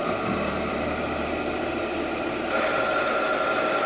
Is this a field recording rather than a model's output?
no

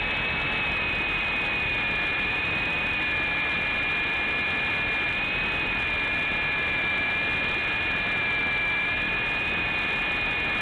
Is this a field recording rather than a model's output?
yes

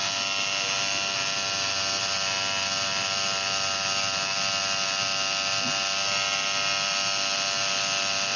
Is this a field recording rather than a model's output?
yes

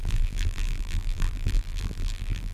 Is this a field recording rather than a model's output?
no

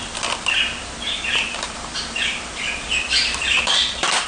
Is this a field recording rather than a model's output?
no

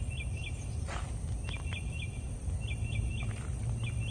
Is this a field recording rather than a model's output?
yes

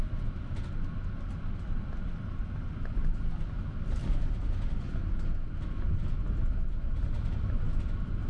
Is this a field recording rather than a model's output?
yes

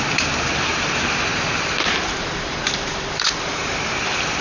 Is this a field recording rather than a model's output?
no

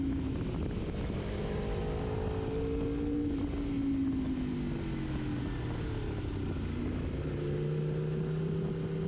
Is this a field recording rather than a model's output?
yes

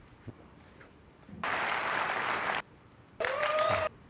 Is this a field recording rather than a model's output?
no